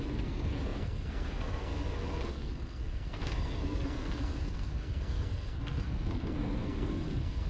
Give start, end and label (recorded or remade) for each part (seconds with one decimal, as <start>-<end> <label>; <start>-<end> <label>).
0.0-7.5 remade